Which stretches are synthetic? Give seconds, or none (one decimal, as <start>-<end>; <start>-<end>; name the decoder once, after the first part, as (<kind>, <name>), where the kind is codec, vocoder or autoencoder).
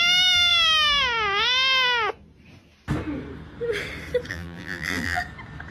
4.3-5.2 (vocoder, BigVGAN v2)